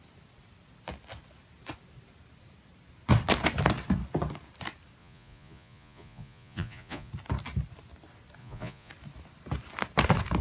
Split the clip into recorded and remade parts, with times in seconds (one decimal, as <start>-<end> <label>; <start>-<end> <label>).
0.0-5.0 recorded; 5.0-7.1 remade; 7.1-8.4 recorded; 8.4-8.9 remade; 8.9-10.4 recorded